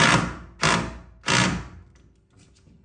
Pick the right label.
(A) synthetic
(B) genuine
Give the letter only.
B